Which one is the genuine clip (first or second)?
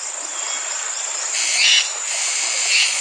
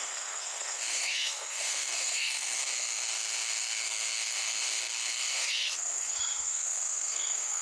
first